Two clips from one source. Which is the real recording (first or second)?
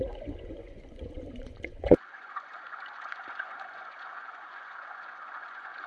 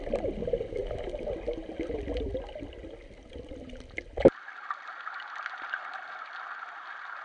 second